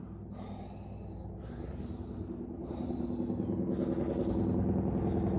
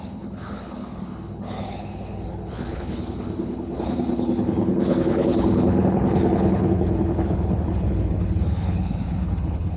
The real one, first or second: first